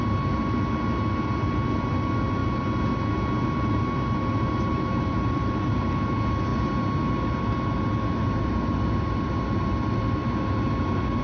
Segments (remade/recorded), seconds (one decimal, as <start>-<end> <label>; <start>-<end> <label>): 0.0-11.2 recorded